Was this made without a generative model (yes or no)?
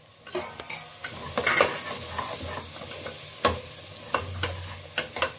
yes